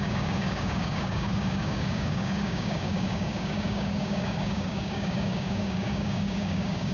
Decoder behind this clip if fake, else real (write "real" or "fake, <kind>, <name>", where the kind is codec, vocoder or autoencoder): fake, codec, DAC